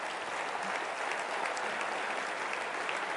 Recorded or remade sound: recorded